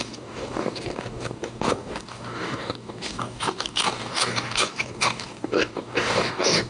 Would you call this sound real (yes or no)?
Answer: no